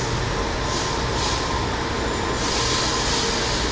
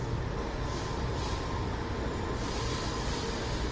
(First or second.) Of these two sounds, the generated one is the second